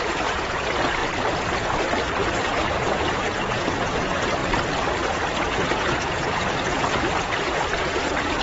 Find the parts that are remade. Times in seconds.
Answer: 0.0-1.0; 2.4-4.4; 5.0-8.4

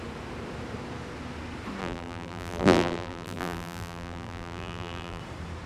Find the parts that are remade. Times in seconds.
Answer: 1.8-5.2